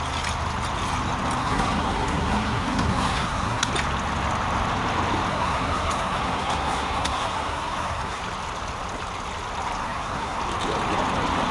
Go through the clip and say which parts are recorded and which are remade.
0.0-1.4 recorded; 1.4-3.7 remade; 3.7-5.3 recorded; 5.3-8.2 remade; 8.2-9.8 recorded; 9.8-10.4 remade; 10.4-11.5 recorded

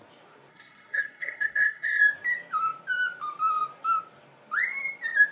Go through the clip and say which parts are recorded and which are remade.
0.0-0.5 recorded; 0.5-2.0 remade; 2.0-5.3 recorded

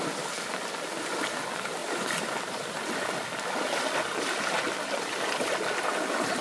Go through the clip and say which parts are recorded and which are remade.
0.0-6.4 recorded